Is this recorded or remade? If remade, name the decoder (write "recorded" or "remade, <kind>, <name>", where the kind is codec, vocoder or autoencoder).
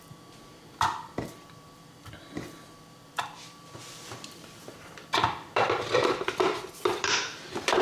remade, vocoder, BigVGAN v2